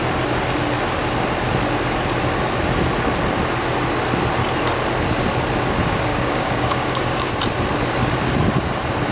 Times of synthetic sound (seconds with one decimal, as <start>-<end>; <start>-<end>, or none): 6.1-7.3